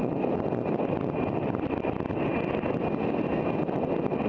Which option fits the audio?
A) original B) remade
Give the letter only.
A